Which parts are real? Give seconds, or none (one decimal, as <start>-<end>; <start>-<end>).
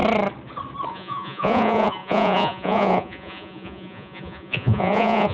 0.0-0.9